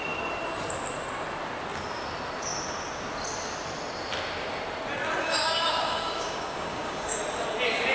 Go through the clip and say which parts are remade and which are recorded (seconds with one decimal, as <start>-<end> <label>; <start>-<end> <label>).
0.0-5.2 recorded; 5.2-7.2 remade; 7.2-7.9 recorded